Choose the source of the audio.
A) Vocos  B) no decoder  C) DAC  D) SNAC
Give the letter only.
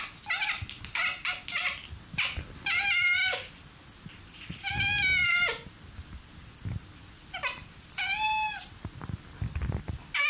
B